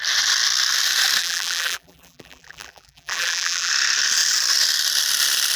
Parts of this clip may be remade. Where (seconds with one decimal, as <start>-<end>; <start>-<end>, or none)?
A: 1.2-3.7